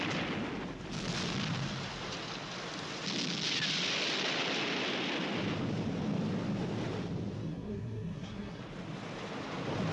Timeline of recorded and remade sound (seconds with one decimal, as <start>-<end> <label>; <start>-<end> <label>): 0.0-7.4 recorded; 7.4-8.6 remade; 8.6-9.9 recorded

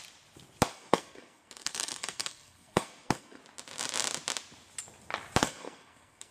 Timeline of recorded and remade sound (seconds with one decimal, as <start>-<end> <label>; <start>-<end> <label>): 0.0-0.7 recorded; 0.7-3.4 remade; 3.4-5.4 recorded; 5.4-6.3 remade